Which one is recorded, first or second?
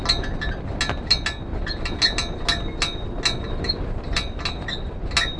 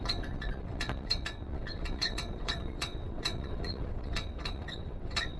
first